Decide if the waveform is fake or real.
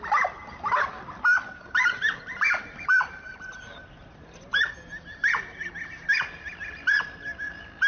real